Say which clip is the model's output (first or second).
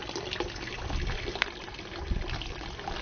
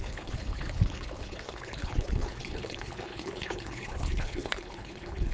second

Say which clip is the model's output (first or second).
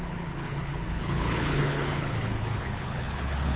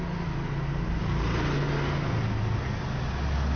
first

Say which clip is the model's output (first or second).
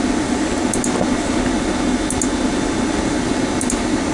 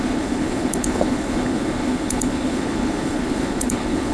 second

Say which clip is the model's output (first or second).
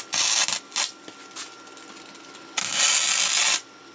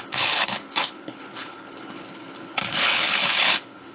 second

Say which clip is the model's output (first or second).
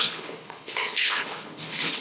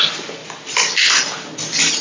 first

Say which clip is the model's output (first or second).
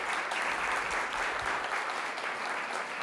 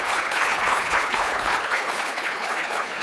second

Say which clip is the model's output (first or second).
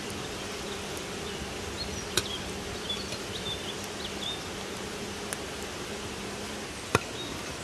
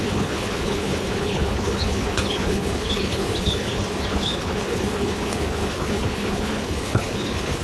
second